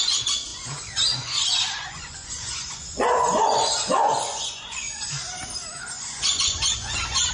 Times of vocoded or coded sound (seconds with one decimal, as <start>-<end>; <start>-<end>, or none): 0.0-5.2; 5.7-7.3